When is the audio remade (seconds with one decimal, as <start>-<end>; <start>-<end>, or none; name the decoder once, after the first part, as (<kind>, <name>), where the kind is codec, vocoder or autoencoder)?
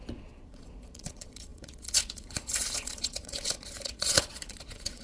0.0-5.0 (vocoder, Vocos)